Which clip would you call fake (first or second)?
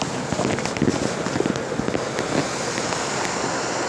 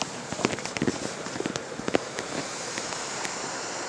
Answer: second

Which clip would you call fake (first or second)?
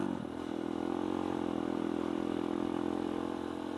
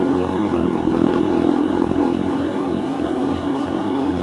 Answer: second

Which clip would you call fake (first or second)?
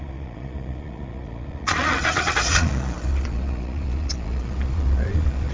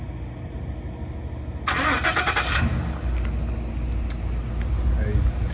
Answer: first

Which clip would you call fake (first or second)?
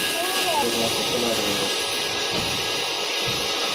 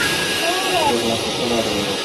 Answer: second